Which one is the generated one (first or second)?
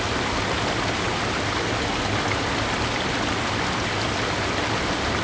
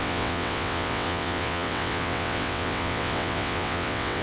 second